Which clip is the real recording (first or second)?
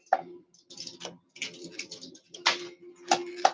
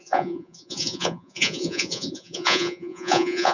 first